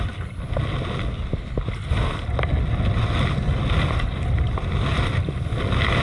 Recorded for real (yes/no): yes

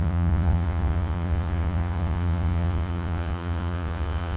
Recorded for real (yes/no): no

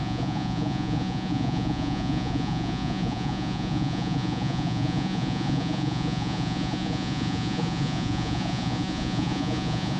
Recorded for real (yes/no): no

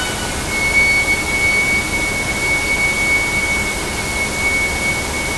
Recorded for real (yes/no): yes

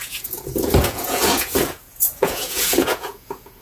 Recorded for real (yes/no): no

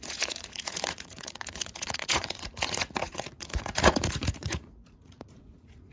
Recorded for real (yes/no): no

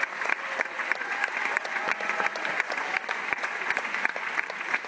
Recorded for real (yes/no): no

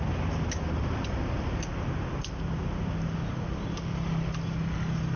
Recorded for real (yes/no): yes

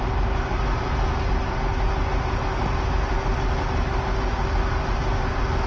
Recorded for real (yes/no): yes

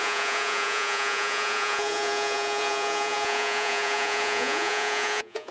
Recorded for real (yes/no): no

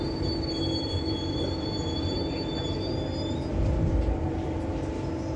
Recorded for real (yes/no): yes